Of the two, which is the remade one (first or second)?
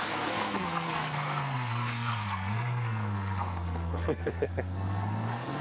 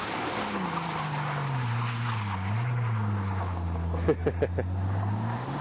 first